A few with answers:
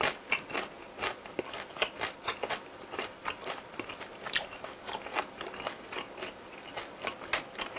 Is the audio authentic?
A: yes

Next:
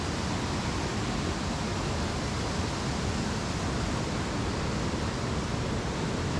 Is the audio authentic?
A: yes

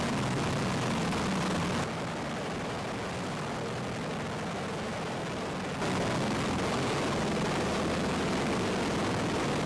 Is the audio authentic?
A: yes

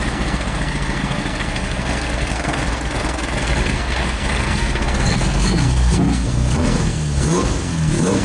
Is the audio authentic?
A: no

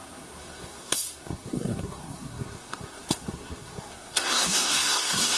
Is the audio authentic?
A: no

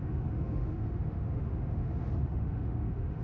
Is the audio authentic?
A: no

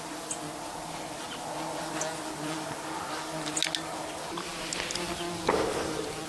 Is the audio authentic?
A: yes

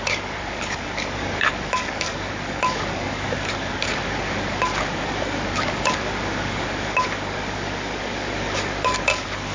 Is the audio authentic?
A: no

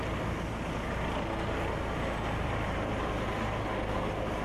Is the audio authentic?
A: yes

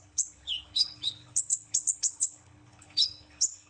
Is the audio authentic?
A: no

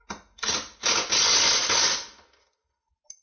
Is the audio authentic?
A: yes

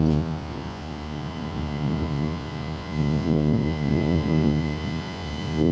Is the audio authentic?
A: no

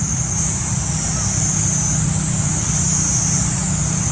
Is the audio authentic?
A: yes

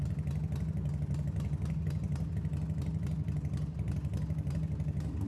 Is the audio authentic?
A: yes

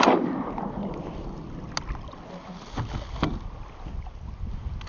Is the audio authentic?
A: yes